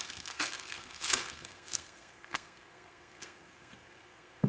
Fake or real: fake